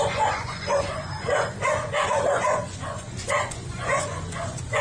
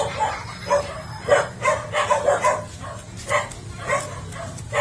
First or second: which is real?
second